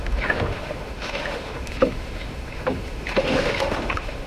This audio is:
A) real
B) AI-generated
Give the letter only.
B